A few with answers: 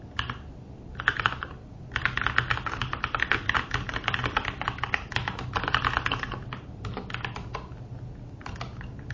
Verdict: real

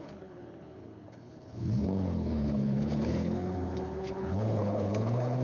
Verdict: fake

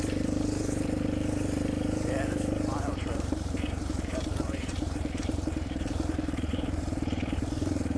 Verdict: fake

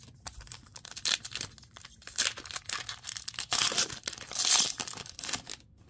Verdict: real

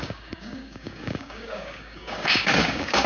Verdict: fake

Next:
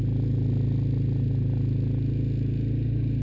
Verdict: real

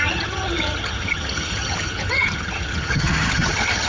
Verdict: fake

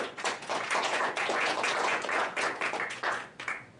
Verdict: fake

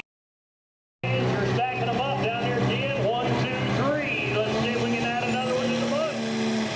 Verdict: real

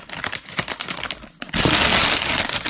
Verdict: real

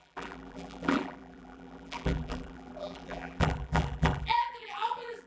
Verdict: fake